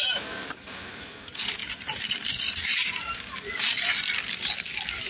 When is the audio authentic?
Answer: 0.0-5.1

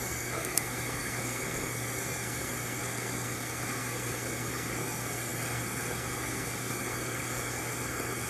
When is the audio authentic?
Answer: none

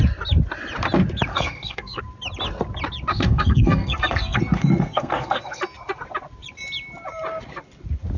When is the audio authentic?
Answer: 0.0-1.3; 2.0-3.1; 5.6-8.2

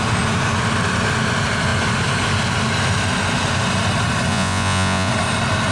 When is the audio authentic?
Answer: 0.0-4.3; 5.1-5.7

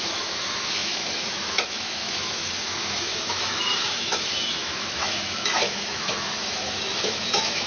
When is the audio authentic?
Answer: none